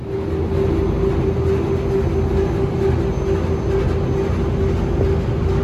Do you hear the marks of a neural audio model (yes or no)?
no